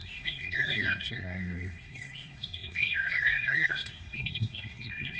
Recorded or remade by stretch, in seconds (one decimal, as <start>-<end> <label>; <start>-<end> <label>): 0.0-5.2 remade